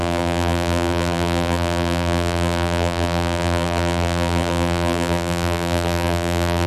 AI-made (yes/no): yes